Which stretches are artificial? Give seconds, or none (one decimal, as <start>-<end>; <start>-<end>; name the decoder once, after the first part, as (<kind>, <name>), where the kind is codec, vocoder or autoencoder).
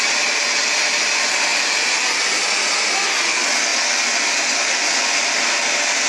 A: none